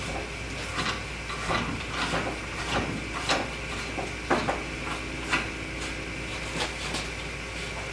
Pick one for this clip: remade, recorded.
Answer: recorded